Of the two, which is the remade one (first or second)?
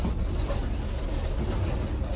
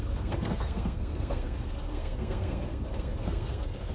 second